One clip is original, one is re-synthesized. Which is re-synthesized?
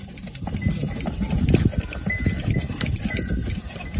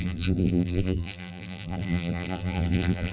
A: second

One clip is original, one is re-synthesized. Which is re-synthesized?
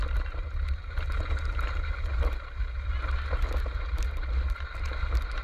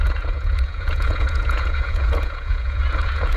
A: second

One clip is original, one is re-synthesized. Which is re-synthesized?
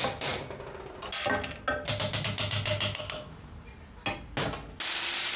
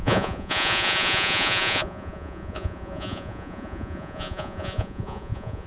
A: second